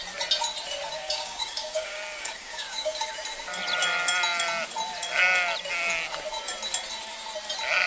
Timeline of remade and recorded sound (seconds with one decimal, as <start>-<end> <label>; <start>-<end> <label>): 0.0-0.9 recorded; 0.9-3.1 remade; 3.1-7.9 recorded